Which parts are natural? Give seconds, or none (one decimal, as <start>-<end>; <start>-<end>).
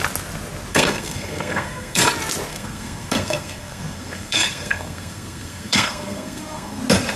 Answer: 0.0-0.7; 2.0-2.5; 6.8-7.2